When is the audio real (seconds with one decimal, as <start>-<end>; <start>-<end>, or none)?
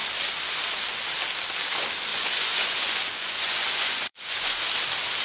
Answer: 0.0-2.1; 4.6-5.2